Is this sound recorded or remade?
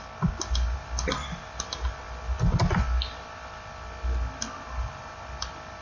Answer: recorded